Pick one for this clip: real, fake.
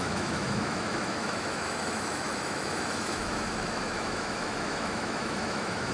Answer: fake